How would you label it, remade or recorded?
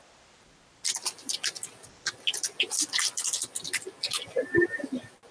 recorded